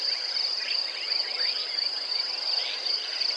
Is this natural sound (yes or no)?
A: yes